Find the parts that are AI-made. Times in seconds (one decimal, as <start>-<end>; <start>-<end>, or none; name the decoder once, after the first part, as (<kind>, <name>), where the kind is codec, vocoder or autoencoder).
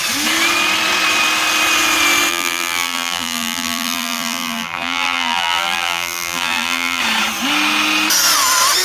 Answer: 2.3-7.0 (vocoder, BigVGAN v2)